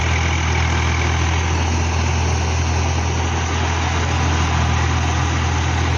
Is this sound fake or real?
real